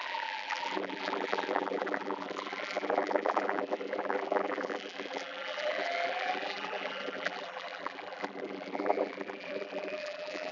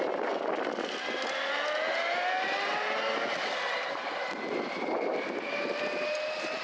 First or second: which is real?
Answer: second